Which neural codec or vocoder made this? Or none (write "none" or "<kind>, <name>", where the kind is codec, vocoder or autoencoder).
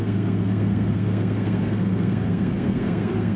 codec, SNAC